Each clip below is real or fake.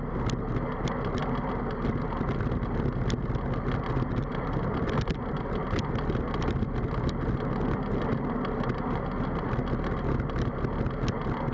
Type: real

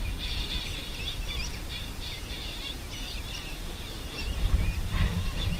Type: real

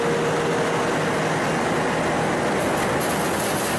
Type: real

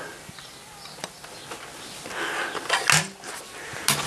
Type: real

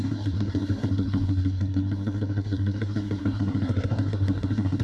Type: fake